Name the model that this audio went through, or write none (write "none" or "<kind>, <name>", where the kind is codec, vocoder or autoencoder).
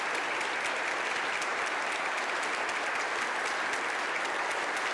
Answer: none